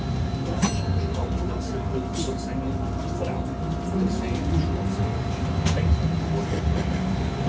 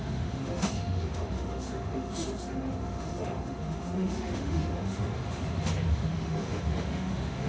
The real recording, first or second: first